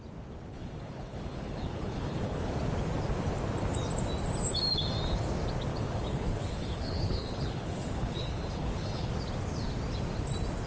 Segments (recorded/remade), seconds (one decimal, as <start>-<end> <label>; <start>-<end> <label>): 0.0-0.5 recorded; 0.5-2.5 remade; 2.5-5.7 recorded; 5.7-9.1 remade; 9.1-10.7 recorded

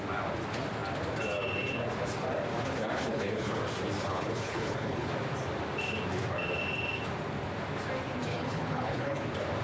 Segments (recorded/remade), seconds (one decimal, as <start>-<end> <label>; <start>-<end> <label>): 0.0-3.1 recorded; 3.1-3.6 remade; 3.6-4.0 recorded; 4.0-5.1 remade; 5.1-8.3 recorded; 8.3-9.2 remade; 9.2-9.6 recorded

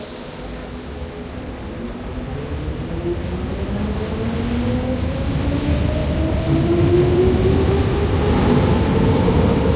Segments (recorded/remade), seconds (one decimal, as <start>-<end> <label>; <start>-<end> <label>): 0.0-9.8 recorded